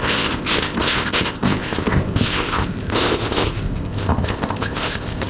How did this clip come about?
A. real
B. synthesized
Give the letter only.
B